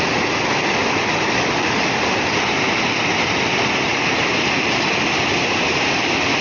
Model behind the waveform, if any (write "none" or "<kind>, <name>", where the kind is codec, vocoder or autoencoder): none